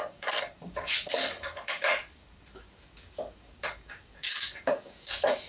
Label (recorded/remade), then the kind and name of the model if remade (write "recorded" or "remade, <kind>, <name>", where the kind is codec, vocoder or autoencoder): remade, codec, DAC